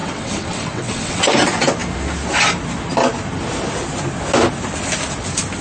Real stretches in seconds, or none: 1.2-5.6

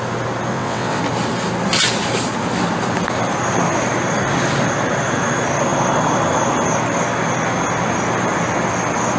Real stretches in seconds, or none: 0.0-0.5; 1.0-9.2

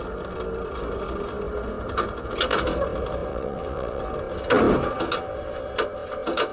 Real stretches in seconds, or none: 0.0-3.3; 4.0-6.5

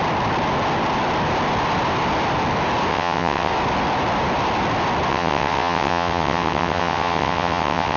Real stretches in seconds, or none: 0.0-2.9; 3.5-5.1